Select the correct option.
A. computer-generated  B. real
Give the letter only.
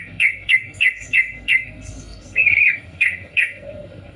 A